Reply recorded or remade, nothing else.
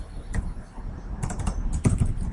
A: remade